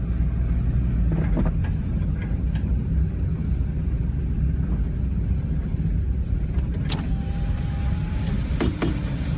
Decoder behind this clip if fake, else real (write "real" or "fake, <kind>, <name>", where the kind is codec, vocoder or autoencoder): real